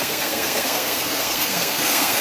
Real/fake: fake